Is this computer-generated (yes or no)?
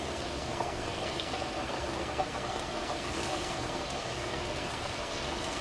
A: yes